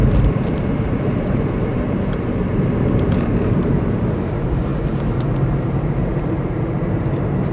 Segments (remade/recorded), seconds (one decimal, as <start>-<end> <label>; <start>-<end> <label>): 0.0-4.7 remade; 4.7-5.2 recorded; 5.2-7.5 remade